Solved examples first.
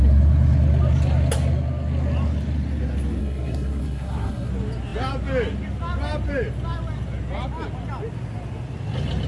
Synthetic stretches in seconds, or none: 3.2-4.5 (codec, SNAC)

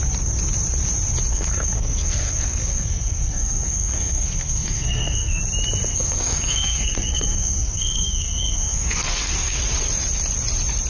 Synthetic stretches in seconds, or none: 1.3-5.4 (codec, SNAC); 5.9-9.6

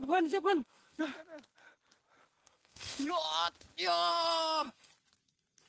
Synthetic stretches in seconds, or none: 0.0-1.0 (codec, SNAC); 2.4-3.1; 4.1-4.9

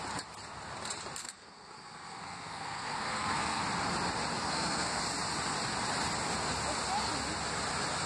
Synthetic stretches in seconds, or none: 1.2-3.6 (codec, SNAC); 4.4-5.0

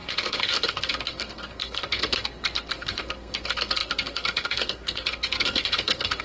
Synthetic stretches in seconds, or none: 0.0-6.2 (codec, SNAC)

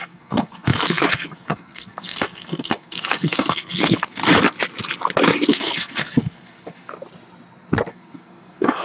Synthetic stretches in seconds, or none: 0.0-4.2 (codec, SNAC); 5.5-6.9; 7.9-8.8